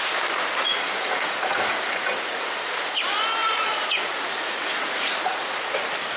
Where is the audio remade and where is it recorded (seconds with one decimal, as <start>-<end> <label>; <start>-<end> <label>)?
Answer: 0.0-0.7 recorded; 0.7-3.0 remade; 3.0-3.4 recorded; 3.4-5.8 remade; 5.8-6.2 recorded